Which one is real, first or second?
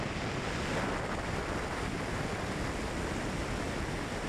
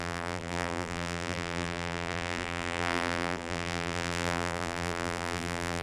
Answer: first